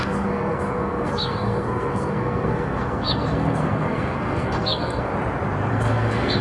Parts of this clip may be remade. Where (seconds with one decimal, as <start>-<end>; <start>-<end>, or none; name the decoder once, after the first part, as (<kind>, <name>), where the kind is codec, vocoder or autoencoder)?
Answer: 0.0-5.1 (codec, SNAC); 5.7-6.4